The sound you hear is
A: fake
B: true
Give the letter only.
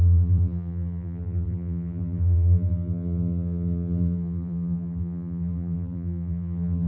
A